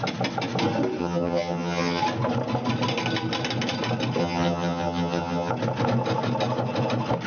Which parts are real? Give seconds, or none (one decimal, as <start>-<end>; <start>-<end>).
0.0-1.0; 2.0-4.2; 5.5-7.3